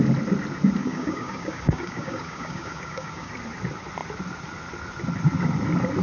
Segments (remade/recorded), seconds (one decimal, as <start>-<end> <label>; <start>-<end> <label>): 0.0-0.8 recorded; 0.8-3.3 remade; 3.3-6.0 recorded